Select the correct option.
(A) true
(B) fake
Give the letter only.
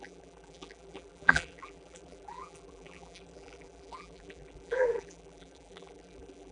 B